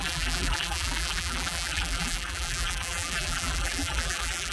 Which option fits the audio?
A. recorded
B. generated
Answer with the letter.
B